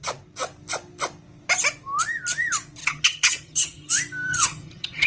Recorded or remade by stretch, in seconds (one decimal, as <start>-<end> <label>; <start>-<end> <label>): 0.0-2.8 recorded; 2.8-3.9 remade; 3.9-4.3 recorded; 4.3-5.1 remade